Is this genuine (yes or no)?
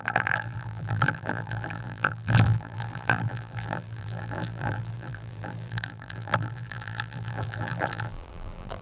no